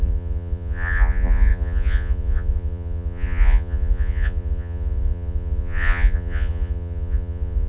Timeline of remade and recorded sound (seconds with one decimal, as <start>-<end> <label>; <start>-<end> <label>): 0.0-7.7 remade